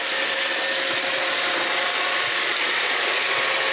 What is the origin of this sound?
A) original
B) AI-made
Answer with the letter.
A